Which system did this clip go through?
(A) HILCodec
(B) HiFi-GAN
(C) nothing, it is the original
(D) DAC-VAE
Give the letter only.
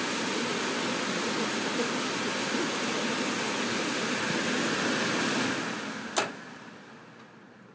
C